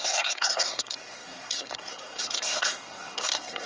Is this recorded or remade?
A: remade